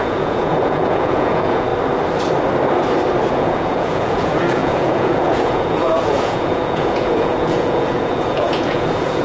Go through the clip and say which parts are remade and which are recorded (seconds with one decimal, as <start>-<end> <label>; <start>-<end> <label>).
0.0-1.7 remade; 1.7-3.3 recorded; 3.3-9.2 remade